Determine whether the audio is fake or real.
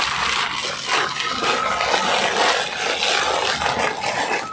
real